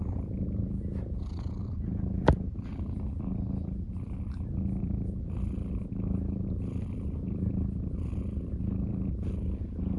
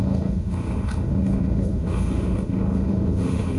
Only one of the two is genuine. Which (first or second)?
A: first